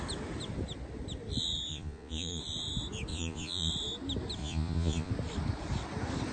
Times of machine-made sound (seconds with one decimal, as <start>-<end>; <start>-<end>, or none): 1.7-2.4; 3.1-3.7; 4.4-5.1